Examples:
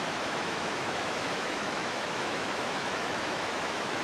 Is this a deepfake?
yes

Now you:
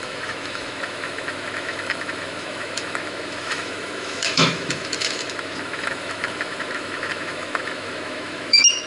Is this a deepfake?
yes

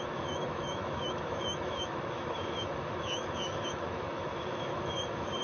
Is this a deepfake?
yes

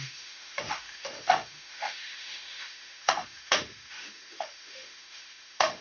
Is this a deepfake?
yes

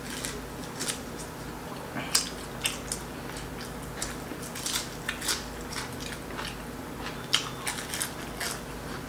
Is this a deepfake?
no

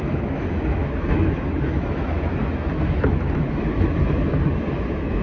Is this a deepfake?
yes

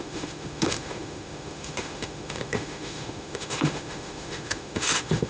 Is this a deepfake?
yes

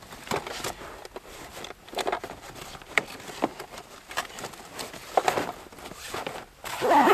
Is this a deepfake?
no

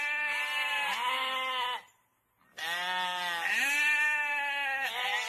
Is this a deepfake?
no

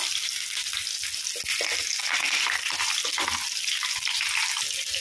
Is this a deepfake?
no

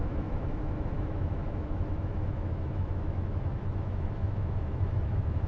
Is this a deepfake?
yes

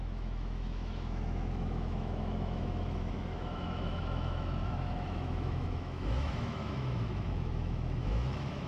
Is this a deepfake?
yes